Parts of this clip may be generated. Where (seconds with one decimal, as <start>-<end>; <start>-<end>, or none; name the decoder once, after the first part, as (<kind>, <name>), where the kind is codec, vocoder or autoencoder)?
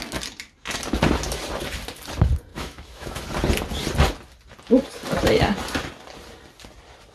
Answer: 2.5-3.2 (autoencoder, DAC-VAE)